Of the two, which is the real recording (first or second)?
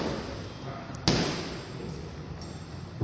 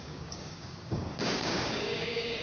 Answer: first